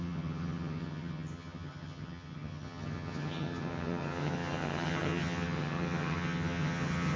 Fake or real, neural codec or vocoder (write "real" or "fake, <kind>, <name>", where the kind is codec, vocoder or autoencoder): fake, vocoder, HiFi-GAN